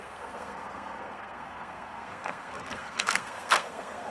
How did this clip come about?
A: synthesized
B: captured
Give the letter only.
A